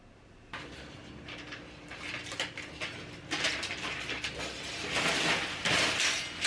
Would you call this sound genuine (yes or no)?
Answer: yes